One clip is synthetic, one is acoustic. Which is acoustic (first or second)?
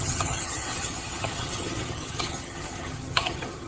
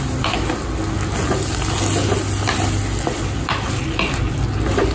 second